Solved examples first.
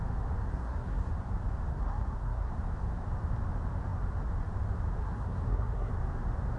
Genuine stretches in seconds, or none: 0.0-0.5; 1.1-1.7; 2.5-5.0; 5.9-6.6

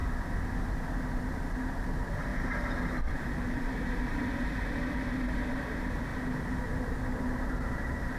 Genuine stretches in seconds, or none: 0.0-1.2; 2.3-3.0; 6.1-7.2

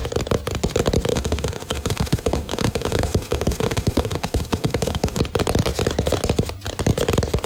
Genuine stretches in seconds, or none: 0.0-1.1; 5.2-7.5

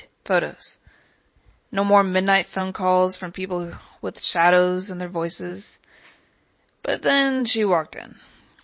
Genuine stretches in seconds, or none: 0.0-5.5; 6.3-8.6